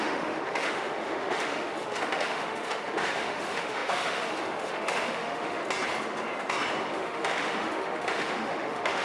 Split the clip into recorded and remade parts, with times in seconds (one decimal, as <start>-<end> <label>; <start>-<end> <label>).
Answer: 0.0-5.6 remade; 5.6-6.9 recorded; 6.9-9.0 remade

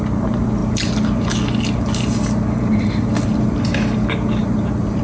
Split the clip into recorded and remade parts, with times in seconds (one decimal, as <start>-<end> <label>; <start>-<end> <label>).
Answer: 0.0-4.4 recorded; 4.4-5.0 remade

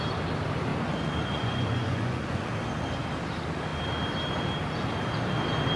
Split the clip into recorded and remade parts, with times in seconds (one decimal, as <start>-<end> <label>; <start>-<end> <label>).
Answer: 0.0-0.7 recorded; 0.7-2.5 remade; 2.5-5.8 recorded